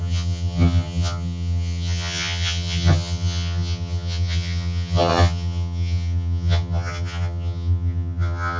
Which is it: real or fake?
fake